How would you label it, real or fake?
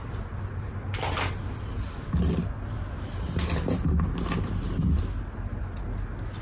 real